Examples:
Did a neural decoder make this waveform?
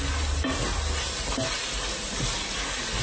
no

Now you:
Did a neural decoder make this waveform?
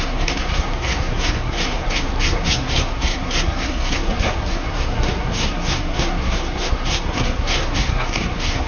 yes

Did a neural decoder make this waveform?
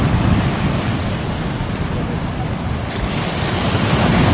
yes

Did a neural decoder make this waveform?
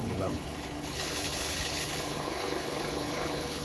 yes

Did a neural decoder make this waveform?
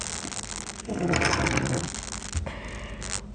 no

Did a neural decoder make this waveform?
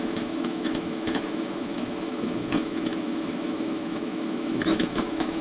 yes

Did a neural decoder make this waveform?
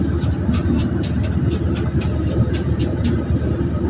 no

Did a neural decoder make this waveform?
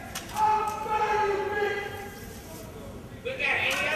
yes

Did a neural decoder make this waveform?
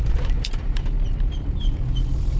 yes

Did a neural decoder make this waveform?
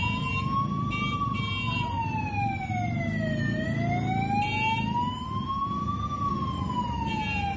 no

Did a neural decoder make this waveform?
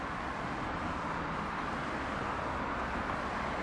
no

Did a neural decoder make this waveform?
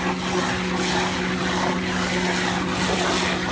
no